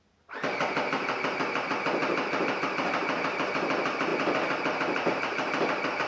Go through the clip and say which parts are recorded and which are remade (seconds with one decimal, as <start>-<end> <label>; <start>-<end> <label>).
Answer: 0.0-6.1 recorded